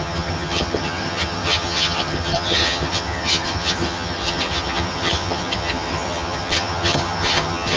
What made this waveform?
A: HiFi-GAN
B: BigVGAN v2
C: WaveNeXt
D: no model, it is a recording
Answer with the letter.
A